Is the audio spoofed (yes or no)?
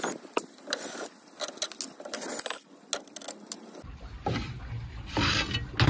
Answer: no